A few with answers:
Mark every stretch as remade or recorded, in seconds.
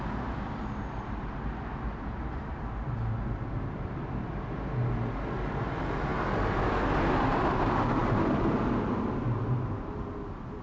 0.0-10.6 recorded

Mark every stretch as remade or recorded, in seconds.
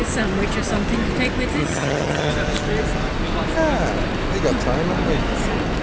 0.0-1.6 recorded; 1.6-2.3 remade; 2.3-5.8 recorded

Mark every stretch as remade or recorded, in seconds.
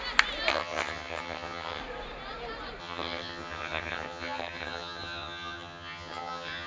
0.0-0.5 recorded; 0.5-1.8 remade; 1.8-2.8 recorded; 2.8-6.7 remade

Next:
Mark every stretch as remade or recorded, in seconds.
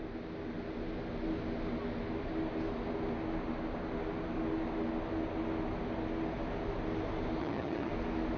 0.0-7.4 recorded; 7.4-7.9 remade; 7.9-8.4 recorded